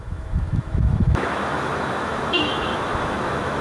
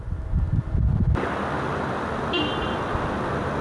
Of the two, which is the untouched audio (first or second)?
second